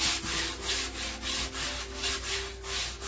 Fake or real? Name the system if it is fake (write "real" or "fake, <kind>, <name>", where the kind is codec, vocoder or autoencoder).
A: real